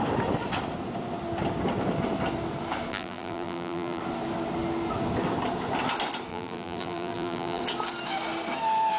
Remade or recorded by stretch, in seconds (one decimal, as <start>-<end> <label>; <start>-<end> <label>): 0.0-2.9 recorded; 2.9-4.0 remade; 4.0-6.3 recorded; 6.3-7.6 remade; 7.6-9.0 recorded